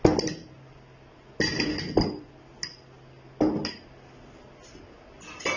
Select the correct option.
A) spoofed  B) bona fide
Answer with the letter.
B